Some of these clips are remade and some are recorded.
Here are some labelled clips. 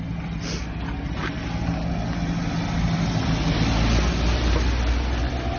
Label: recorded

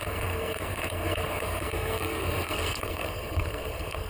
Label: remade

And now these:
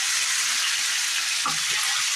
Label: recorded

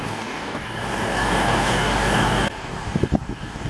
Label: remade